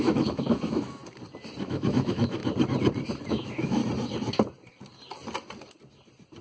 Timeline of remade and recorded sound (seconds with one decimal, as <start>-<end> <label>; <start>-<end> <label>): 0.0-1.0 remade; 1.0-1.6 recorded; 1.6-2.4 remade; 2.4-3.3 recorded; 3.3-3.8 remade; 3.8-6.4 recorded